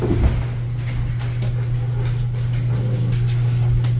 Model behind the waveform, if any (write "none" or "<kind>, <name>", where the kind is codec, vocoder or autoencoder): none